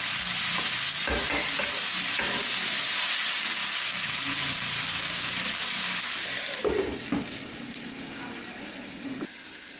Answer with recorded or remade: recorded